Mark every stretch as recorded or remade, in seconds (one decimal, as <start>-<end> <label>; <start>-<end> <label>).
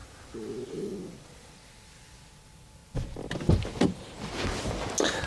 0.0-5.3 recorded